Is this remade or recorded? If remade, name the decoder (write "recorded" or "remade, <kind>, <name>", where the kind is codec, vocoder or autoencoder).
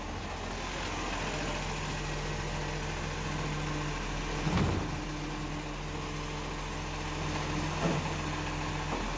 recorded